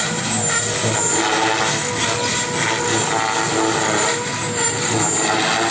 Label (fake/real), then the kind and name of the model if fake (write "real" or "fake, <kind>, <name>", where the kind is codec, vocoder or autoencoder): real